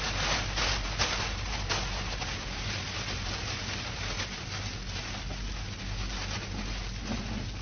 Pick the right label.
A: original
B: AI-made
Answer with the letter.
A